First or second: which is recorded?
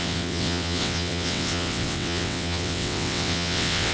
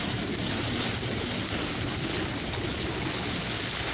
second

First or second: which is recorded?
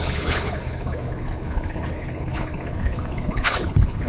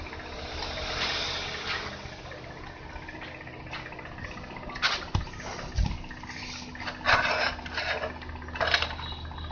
second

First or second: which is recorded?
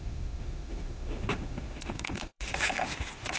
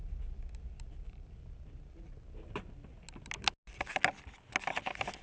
second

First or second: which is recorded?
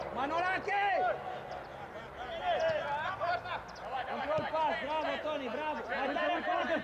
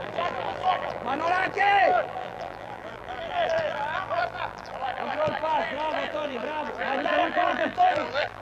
first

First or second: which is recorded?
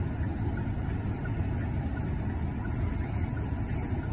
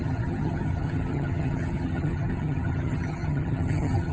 first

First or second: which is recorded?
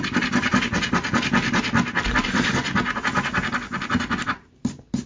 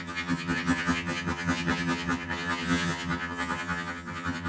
first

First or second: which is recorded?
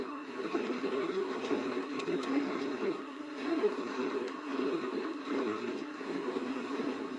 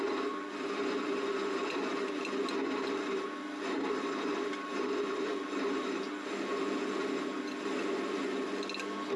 second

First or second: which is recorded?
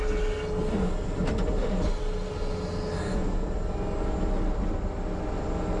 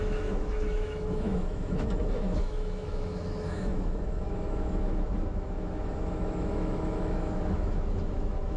first